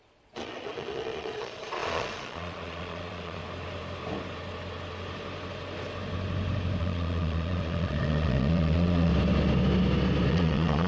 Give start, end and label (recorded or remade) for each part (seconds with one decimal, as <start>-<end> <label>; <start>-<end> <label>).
0.0-3.4 remade; 3.4-6.8 recorded; 6.8-9.1 remade; 9.1-10.3 recorded; 10.3-10.9 remade